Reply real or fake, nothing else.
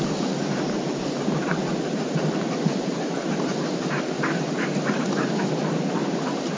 real